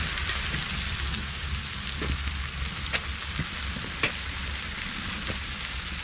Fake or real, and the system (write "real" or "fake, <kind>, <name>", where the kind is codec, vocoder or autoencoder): real